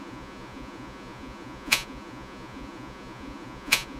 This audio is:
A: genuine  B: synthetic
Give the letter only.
B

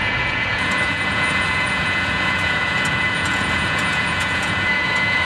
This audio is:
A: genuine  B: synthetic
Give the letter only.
B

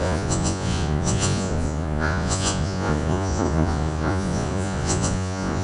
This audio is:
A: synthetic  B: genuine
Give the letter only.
A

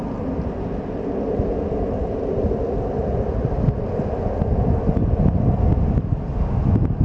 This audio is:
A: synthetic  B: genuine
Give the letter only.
B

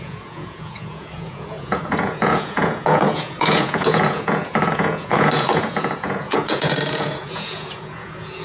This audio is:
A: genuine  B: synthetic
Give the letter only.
B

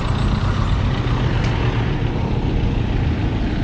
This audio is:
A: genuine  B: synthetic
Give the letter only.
A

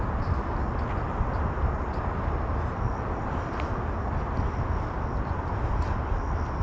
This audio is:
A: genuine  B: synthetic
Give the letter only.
A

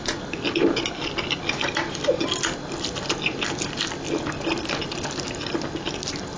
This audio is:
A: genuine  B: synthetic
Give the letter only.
A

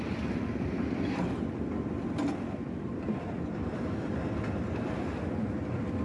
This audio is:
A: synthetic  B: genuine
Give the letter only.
B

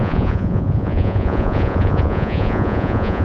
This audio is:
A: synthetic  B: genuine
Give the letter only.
A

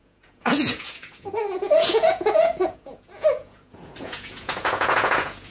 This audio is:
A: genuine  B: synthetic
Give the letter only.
B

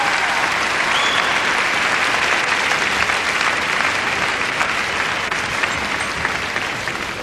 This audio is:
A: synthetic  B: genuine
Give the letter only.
B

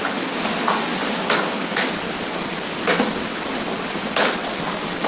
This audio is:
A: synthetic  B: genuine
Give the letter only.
B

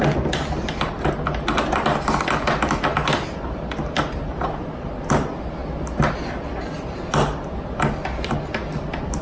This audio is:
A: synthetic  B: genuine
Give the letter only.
B